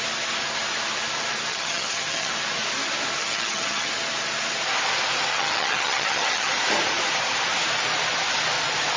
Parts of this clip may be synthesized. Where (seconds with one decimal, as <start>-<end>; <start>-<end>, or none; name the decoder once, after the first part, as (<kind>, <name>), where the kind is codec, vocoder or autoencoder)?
1.5-2.3 (vocoder, HiFi-GAN); 3.2-3.9; 5.3-6.5